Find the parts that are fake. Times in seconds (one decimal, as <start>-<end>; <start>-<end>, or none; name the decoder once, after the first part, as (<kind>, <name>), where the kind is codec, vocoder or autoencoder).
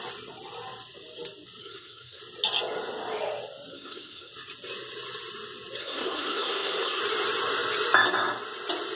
1.6-2.2 (codec, SNAC); 3.7-4.3; 5.8-7.0